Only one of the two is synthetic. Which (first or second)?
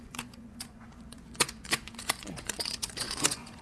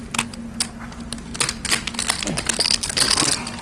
first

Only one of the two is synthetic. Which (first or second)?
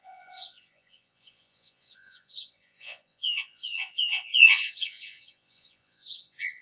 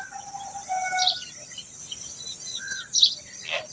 first